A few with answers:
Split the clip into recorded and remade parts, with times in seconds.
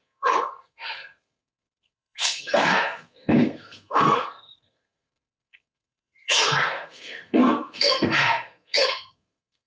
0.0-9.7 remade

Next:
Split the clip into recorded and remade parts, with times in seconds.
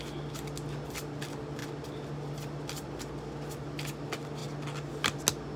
0.0-5.6 recorded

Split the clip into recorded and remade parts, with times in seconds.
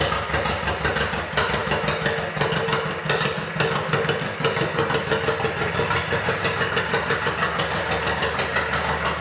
0.0-9.2 recorded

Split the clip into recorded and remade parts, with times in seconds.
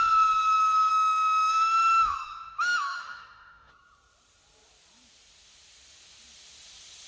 0.0-0.9 recorded; 0.9-3.7 remade; 3.7-7.1 recorded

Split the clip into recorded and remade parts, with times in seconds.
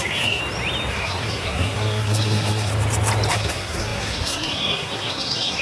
0.0-0.4 remade; 0.4-0.9 recorded; 0.9-2.7 remade; 2.7-3.3 recorded; 3.3-5.6 remade